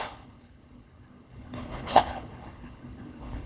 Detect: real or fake fake